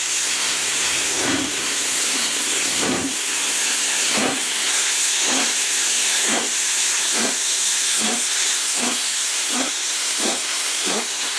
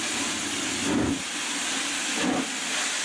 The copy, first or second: first